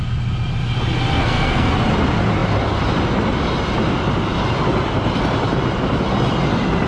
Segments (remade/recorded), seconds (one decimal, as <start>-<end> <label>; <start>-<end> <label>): 0.0-1.2 recorded; 1.2-1.7 remade; 1.7-6.9 recorded